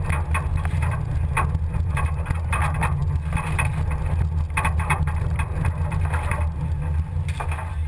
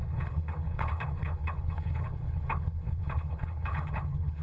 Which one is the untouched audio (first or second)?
first